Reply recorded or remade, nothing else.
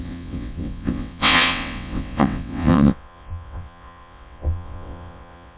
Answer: remade